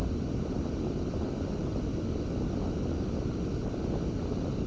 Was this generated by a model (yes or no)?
no